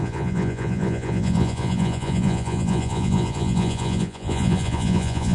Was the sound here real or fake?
fake